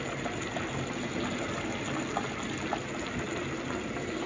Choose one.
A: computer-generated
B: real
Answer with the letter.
B